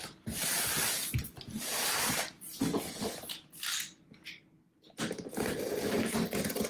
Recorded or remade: recorded